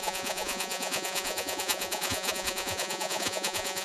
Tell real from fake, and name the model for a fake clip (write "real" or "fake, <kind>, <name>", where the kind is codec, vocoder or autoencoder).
fake, vocoder, Vocos